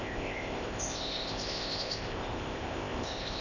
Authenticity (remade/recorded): remade